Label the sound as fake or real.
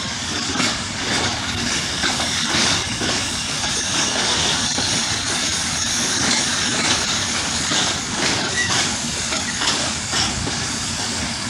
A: fake